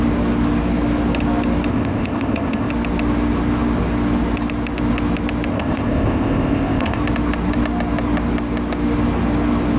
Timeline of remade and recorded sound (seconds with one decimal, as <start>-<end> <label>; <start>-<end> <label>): 0.0-1.7 recorded; 1.7-2.7 remade; 2.7-5.5 recorded; 5.5-7.0 remade; 7.0-9.8 recorded